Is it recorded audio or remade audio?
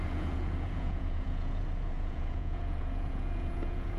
remade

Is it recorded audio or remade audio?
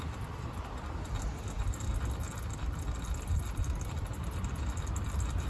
recorded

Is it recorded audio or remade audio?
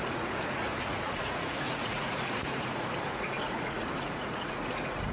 remade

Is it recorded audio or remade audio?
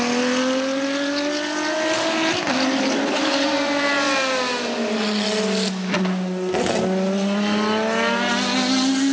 recorded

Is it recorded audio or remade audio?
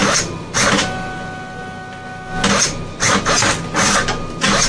recorded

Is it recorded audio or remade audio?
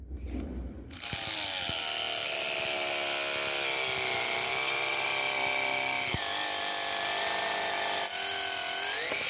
recorded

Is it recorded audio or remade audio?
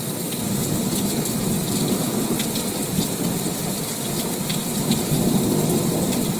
recorded